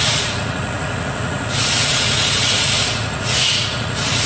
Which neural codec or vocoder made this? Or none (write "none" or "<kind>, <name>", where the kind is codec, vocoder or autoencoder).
vocoder, Vocos